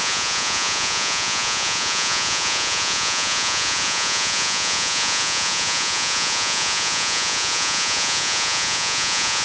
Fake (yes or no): yes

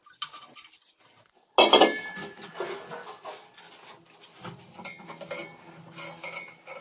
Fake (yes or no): no